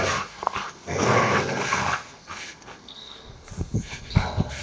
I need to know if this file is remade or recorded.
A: remade